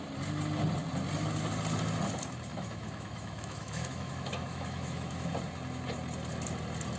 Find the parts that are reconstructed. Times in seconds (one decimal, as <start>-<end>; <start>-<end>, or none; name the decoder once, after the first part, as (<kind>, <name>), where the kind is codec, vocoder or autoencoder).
2.5-5.3 (autoencoder, DAC-VAE)